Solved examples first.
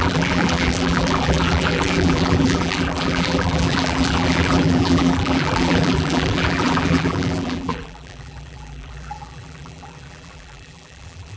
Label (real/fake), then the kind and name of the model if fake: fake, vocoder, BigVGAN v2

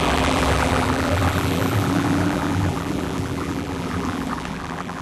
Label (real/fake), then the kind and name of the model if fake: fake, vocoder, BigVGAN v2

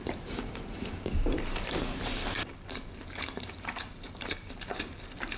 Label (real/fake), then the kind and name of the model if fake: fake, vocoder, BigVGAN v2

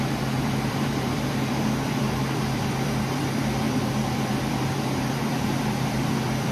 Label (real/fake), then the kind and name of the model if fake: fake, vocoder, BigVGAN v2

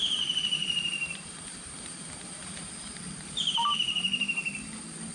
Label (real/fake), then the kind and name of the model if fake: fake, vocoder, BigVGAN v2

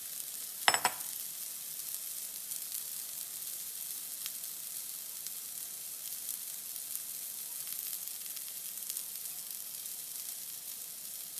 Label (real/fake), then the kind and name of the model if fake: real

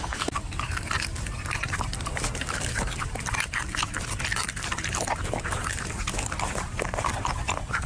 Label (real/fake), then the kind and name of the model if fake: fake, vocoder, BigVGAN v2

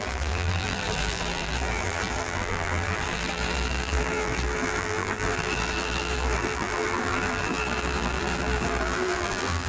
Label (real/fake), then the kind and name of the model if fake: fake, vocoder, BigVGAN v2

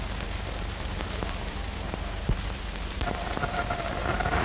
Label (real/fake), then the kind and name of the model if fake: fake, vocoder, BigVGAN v2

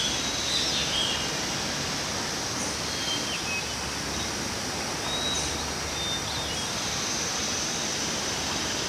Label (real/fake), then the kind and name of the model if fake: real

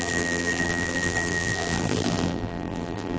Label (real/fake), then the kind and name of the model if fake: fake, vocoder, BigVGAN v2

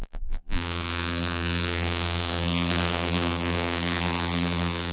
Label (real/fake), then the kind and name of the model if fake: fake, vocoder, BigVGAN v2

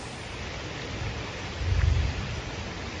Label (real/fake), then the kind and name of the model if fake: real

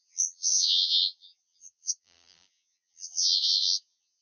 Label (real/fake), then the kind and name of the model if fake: fake, vocoder, BigVGAN v2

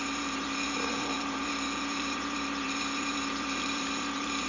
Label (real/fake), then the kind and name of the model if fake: fake, vocoder, BigVGAN v2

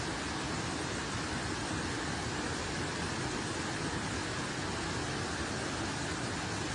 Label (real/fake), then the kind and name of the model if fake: real